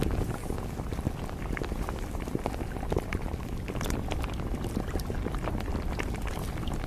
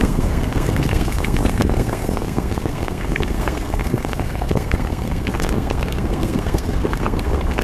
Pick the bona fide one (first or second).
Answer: first